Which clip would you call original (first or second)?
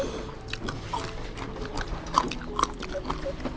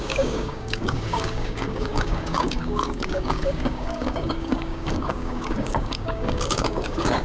first